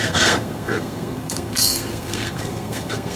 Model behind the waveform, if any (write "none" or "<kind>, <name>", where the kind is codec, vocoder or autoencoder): codec, SNAC